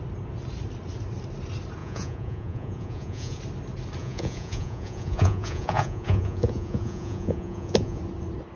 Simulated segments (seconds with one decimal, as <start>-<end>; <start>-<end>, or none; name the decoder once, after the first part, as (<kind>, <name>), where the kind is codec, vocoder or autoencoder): 1.8-3.4 (vocoder, Vocos); 4.0-8.0